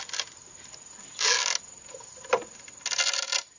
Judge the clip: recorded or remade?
recorded